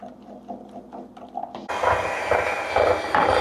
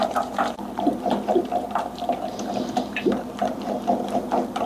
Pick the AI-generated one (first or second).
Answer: second